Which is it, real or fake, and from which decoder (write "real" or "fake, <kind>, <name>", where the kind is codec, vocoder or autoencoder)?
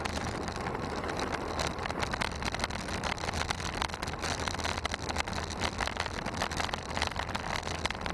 real